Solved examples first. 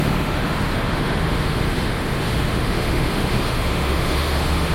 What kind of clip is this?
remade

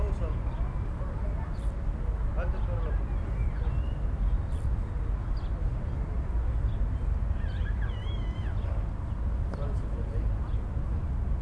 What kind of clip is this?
recorded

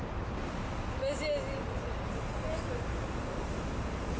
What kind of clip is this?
recorded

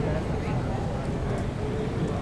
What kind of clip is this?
recorded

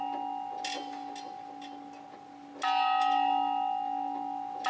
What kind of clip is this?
recorded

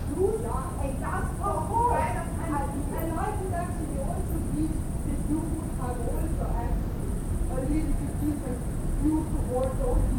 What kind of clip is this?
remade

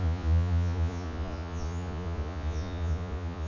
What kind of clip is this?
remade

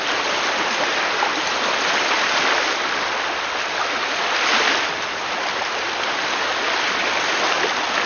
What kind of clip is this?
recorded